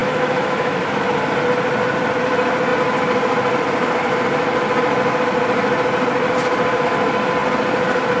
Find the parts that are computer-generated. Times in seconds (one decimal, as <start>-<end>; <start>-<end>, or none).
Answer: 0.0-1.1